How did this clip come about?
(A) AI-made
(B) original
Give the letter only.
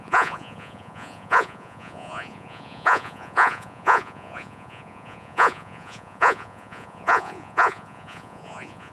A